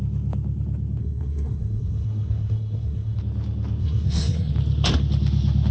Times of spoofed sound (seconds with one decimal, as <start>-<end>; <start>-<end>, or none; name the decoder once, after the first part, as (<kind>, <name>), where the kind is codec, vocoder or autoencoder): 1.0-3.2 (codec, SNAC); 3.8-4.5